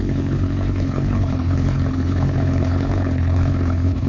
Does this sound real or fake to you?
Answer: fake